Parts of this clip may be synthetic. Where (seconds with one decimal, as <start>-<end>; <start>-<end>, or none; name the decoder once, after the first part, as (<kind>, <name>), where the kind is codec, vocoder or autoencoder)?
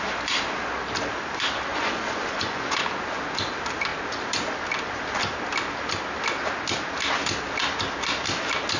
1.7-2.8 (vocoder, Vocos)